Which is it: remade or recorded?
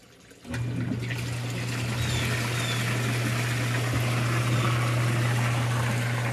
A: recorded